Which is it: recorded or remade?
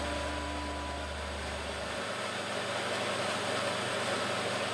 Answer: recorded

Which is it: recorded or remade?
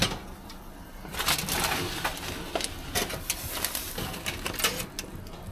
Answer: recorded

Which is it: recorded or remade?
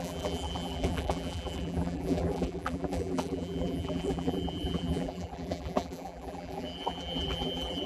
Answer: remade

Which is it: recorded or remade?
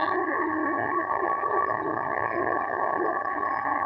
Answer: remade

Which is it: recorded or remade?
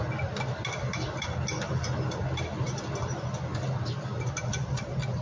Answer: recorded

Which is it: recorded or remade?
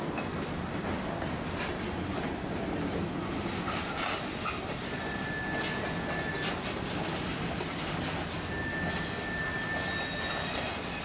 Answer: recorded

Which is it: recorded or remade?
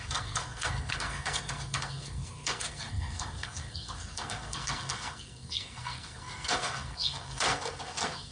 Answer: remade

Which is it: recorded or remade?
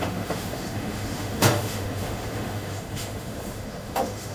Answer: remade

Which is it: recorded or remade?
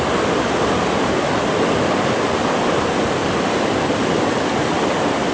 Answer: recorded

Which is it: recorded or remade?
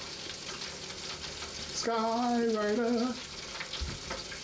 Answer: recorded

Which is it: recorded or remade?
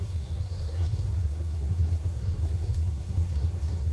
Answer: remade